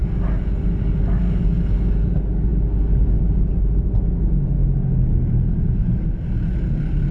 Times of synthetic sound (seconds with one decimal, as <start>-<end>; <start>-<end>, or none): none